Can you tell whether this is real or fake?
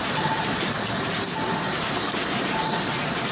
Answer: fake